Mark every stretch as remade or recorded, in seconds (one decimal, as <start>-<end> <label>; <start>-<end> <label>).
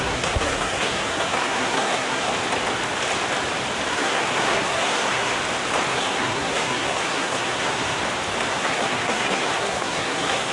0.0-2.3 remade; 2.3-3.9 recorded; 3.9-5.3 remade; 5.3-5.9 recorded; 5.9-8.0 remade; 8.0-8.5 recorded; 8.5-10.5 remade